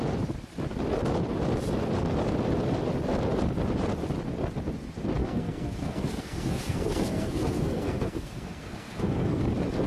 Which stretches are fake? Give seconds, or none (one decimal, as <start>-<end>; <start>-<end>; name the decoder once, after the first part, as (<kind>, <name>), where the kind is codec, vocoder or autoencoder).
5.2-9.4 (codec, SNAC)